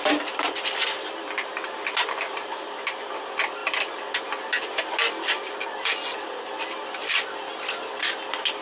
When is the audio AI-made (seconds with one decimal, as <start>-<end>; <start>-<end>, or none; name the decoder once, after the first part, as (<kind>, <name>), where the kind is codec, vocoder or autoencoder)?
1.4-2.9 (vocoder, BigVGAN v2)